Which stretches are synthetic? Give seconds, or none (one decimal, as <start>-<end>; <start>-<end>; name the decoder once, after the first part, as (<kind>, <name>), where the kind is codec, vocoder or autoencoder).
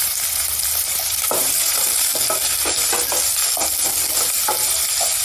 0.0-2.1 (vocoder, BigVGAN v2)